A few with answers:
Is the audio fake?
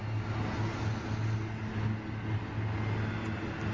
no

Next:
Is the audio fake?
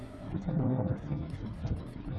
yes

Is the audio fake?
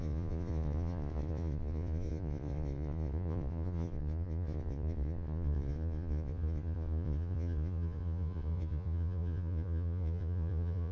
yes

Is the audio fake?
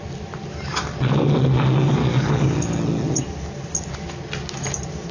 no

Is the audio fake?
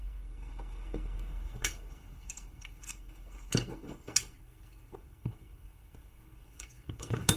yes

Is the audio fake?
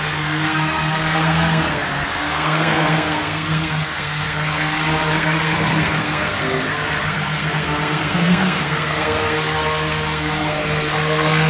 yes